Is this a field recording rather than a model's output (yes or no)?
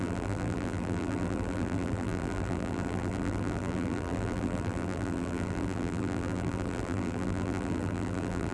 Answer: no